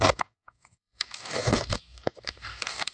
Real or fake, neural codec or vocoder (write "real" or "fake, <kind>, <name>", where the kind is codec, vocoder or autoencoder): fake, codec, DAC